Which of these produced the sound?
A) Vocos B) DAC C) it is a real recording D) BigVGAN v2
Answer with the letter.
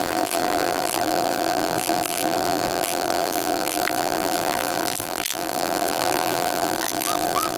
D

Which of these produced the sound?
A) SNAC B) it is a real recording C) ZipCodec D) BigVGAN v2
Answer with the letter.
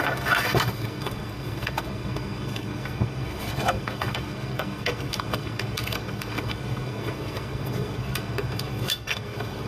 A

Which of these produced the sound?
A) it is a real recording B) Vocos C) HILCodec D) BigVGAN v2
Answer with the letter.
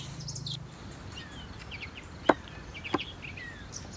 A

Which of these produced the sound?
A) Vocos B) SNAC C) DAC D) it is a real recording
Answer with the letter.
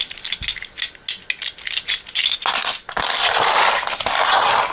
D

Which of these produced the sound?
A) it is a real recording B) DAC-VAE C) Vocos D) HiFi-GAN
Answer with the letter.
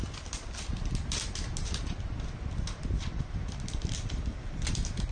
A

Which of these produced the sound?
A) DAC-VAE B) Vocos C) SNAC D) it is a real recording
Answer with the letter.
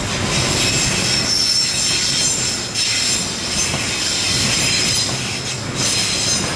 D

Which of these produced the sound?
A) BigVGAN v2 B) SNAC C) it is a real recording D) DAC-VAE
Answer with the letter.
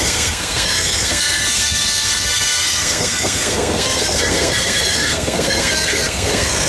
B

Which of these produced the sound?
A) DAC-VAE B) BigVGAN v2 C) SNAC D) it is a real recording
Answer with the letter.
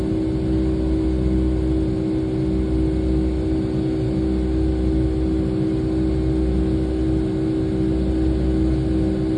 D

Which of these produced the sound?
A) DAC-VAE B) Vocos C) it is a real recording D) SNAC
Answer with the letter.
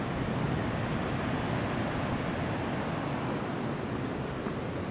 C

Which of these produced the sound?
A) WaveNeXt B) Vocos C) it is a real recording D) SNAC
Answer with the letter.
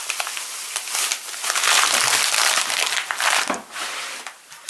C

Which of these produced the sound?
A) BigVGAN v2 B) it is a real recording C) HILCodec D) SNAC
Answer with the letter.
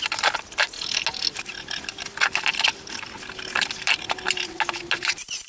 B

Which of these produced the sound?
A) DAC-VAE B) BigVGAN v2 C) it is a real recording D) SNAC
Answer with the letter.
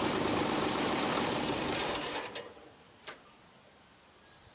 C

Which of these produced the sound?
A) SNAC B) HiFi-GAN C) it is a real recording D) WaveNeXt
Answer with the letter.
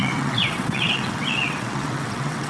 D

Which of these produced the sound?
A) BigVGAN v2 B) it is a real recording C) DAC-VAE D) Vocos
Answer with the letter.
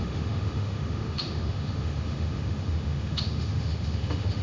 C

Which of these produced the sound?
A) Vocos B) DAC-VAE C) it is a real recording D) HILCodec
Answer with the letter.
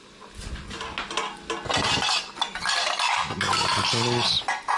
C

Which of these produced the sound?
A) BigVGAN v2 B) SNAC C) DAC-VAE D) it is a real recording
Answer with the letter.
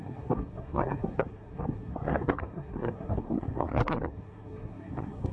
B